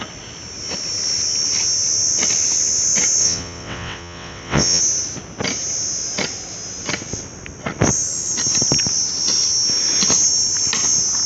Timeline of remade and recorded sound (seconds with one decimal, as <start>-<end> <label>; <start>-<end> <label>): 0.0-3.2 recorded; 3.2-4.8 remade; 4.8-11.3 recorded